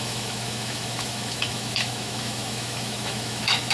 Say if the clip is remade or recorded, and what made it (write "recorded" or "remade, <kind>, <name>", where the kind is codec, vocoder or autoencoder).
remade, autoencoder, DAC-VAE